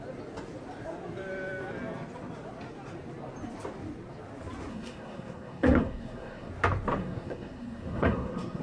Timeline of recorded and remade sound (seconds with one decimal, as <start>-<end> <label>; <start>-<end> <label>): 0.0-4.7 recorded; 4.7-6.5 remade; 6.5-7.0 recorded; 7.0-8.6 remade